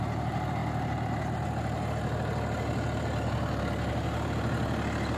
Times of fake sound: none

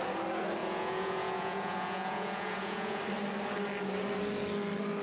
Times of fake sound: 0.6-3.0 (vocoder, Vocos)

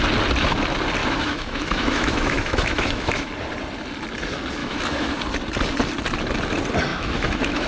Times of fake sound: 1.0-3.3 (autoencoder, DAC-VAE); 4.6-5.1; 6.9-7.7

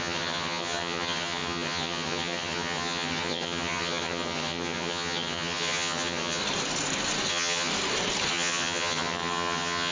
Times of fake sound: 0.0-6.4 (vocoder, HiFi-GAN); 7.3-7.7; 8.3-9.9

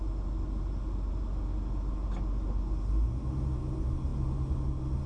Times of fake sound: none

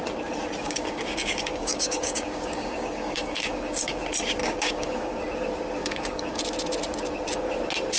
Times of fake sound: 0.6-4.0 (codec, DAC); 4.4-5.2; 5.8-6.4

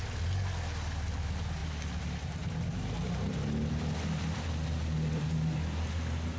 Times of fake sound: none